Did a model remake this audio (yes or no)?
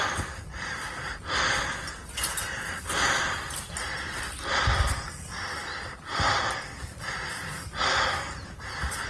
no